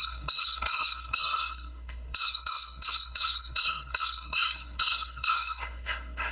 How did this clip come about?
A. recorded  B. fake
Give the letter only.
B